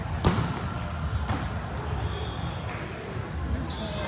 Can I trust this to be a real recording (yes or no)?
yes